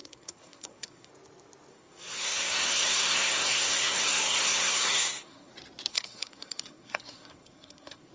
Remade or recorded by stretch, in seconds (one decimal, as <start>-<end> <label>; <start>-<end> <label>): 0.0-1.1 remade; 1.1-1.7 recorded; 1.7-5.5 remade; 5.5-5.9 recorded; 5.9-8.1 remade